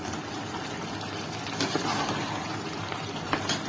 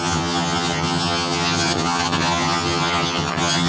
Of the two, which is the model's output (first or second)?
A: second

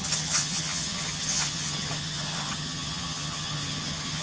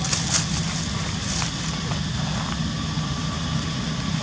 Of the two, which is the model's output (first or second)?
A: first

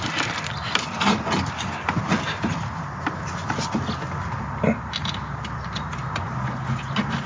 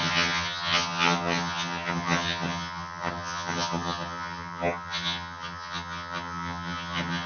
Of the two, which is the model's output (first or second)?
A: second